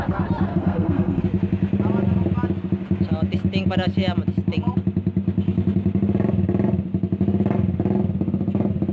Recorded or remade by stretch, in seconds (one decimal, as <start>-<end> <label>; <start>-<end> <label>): 0.0-0.5 recorded; 0.5-1.2 remade; 1.2-8.9 recorded